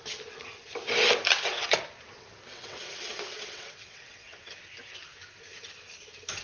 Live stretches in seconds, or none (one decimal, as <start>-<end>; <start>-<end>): 0.0-2.5; 4.5-6.4